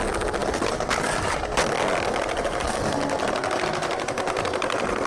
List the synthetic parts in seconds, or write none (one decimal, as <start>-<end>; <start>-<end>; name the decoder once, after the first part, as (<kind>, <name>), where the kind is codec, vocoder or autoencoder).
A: none